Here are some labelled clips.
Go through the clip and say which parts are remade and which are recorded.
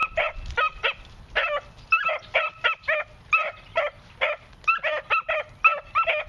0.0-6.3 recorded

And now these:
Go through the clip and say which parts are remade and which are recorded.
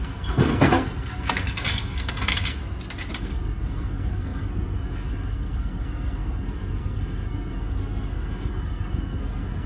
0.0-2.6 remade; 2.6-3.2 recorded; 3.2-9.7 remade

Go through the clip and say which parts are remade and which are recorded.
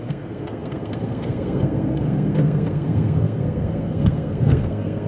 0.0-5.1 remade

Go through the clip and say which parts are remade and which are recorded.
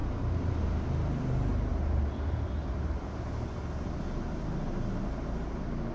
0.0-5.9 recorded